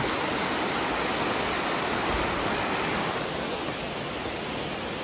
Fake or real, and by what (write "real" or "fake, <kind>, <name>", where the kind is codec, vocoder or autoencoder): real